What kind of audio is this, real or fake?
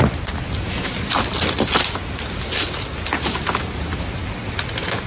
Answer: real